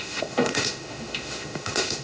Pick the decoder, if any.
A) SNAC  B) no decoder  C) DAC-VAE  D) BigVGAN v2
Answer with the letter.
C